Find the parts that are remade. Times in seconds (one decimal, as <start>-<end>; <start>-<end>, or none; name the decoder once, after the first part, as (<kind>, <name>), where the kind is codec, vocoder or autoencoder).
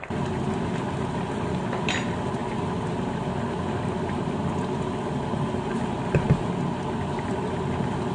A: none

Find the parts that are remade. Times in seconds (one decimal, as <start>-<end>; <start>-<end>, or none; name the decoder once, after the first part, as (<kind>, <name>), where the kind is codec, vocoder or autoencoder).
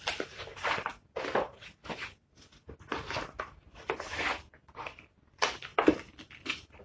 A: none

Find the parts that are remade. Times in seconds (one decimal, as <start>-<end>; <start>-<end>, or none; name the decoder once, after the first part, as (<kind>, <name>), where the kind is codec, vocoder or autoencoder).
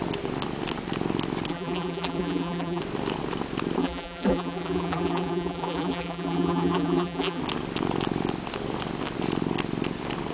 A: 1.5-2.8 (vocoder, BigVGAN v2); 3.8-7.4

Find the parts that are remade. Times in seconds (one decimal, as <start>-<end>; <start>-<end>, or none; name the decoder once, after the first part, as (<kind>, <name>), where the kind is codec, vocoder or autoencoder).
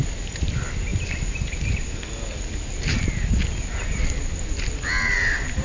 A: none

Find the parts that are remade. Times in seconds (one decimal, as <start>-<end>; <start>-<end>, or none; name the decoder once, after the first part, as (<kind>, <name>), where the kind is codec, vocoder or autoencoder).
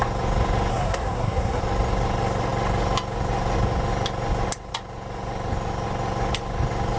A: 0.7-1.6 (codec, SNAC)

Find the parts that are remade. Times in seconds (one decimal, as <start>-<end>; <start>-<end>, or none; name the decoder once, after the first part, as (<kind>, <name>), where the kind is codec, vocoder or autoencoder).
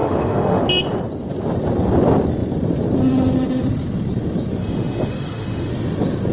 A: 0.0-0.6 (autoencoder, DAC-VAE); 4.6-5.7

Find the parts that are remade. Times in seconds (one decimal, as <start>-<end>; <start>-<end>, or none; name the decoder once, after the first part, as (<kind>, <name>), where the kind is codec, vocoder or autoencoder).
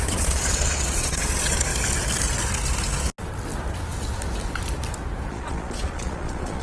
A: 0.0-1.7 (vocoder, Vocos); 5.3-6.6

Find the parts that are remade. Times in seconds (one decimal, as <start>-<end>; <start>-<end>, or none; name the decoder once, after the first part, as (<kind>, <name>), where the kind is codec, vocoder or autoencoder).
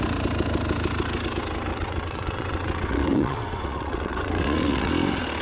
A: 1.7-4.9 (vocoder, WaveNeXt)